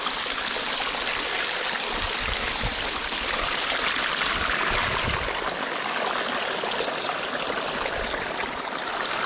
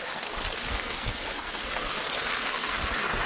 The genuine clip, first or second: first